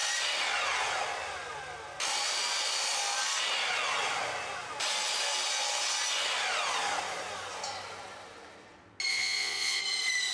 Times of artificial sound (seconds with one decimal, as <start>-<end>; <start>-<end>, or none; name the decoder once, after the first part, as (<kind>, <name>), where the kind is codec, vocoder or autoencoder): 9.1-9.8 (vocoder, Vocos)